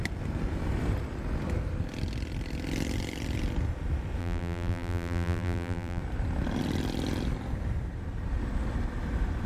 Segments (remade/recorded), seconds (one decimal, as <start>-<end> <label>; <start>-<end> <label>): 0.0-4.2 recorded; 4.2-6.0 remade; 6.0-9.5 recorded